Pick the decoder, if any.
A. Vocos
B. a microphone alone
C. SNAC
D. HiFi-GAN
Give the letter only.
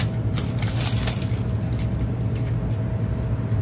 B